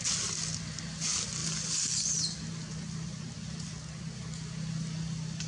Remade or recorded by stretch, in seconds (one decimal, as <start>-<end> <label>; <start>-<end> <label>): 0.0-5.5 recorded